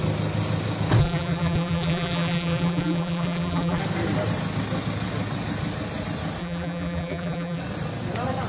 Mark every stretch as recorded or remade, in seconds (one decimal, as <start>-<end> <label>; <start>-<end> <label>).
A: 0.0-1.0 recorded; 1.0-3.8 remade; 3.8-6.4 recorded; 6.4-7.6 remade; 7.6-8.5 recorded

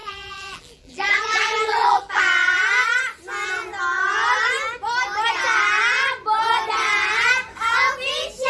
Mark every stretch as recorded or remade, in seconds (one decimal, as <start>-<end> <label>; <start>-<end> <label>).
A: 0.0-2.2 remade; 2.2-8.5 recorded

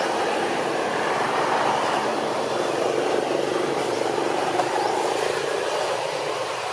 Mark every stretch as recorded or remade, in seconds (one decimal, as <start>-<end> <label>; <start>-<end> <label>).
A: 0.0-2.1 remade; 2.1-2.8 recorded; 2.8-6.7 remade

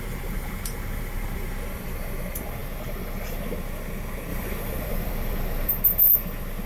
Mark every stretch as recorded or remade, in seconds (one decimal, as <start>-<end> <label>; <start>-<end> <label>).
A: 0.0-4.3 recorded; 4.3-5.7 remade; 5.7-6.7 recorded

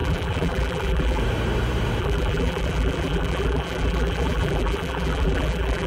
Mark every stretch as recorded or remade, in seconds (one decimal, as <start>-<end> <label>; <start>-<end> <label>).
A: 0.0-1.2 remade; 1.2-2.0 recorded; 2.0-5.9 remade